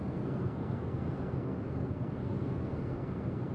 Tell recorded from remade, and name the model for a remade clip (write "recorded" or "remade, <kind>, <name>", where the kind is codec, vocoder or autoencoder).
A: remade, codec, SNAC